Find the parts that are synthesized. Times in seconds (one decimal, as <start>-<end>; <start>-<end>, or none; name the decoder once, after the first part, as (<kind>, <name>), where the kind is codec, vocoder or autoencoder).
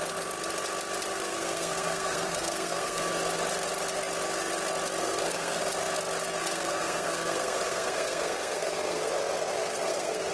1.1-3.1 (codec, SNAC); 5.0-5.6; 6.4-9.1; 9.5-10.3